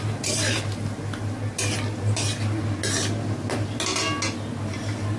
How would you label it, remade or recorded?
recorded